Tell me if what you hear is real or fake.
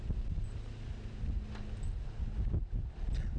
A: real